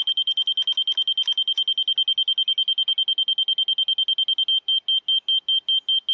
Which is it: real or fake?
real